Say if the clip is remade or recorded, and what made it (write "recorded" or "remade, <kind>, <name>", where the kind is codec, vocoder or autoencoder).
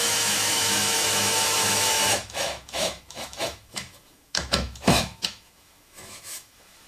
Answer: remade, autoencoder, DAC-VAE